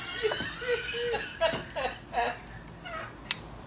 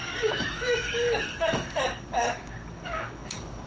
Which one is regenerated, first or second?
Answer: second